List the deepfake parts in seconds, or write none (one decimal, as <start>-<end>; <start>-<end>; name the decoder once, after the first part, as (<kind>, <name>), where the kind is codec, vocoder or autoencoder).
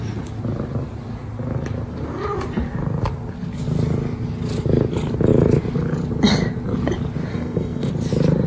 7.3-7.9 (codec, SNAC)